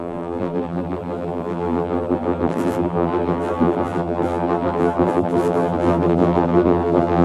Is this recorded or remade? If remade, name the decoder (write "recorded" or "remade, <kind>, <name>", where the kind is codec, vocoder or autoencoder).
remade, vocoder, BigVGAN v2